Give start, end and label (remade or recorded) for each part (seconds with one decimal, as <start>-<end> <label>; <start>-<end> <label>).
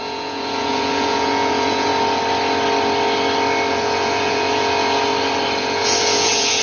0.0-1.9 remade; 1.9-3.7 recorded; 3.7-5.1 remade; 5.1-5.6 recorded; 5.6-6.6 remade